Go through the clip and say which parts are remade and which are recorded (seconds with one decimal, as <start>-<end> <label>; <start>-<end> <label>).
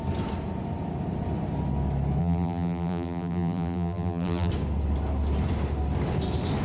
0.0-2.2 recorded; 2.2-4.5 remade; 4.5-6.6 recorded